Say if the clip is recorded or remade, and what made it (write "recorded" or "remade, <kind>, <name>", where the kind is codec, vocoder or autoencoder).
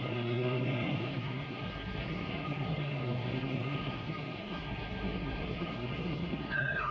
remade, codec, SNAC